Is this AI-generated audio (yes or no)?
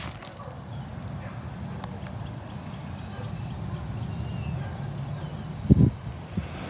no